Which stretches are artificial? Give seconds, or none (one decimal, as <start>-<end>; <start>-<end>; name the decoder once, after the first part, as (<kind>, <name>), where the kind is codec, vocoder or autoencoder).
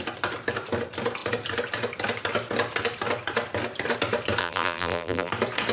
4.4-5.3 (vocoder, BigVGAN v2)